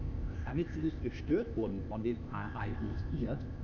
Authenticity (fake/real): fake